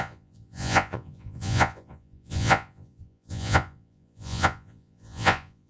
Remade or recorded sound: remade